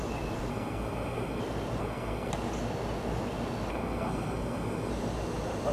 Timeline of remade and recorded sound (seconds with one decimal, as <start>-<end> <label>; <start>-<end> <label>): 0.0-0.5 recorded; 0.5-1.4 remade; 1.4-1.8 recorded; 1.8-2.3 remade; 2.3-3.7 recorded; 3.7-4.9 remade; 4.9-5.7 recorded